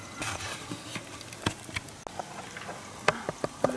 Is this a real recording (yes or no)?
yes